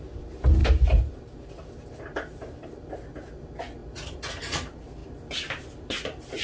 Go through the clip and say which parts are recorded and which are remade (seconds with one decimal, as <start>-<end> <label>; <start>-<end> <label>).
0.0-3.8 recorded; 3.8-4.4 remade; 4.4-6.4 recorded